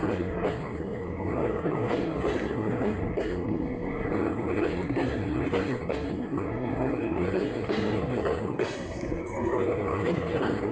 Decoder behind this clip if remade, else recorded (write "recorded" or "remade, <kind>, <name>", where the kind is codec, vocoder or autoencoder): remade, codec, SNAC